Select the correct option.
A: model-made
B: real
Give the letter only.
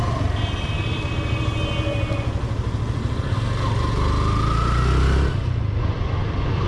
B